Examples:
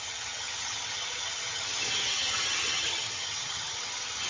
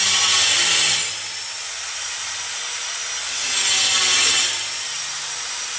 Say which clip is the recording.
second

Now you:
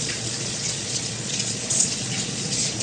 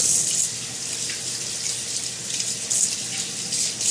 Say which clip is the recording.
second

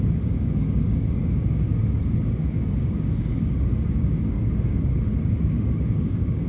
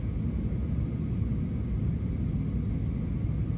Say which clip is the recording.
second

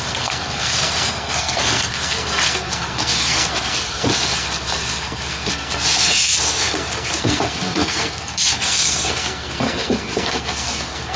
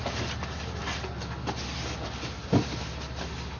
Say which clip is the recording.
second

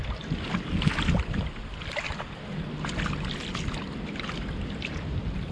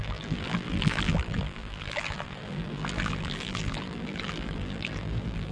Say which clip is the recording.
first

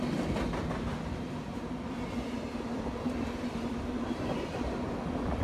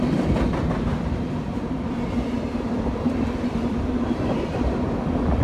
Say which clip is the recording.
first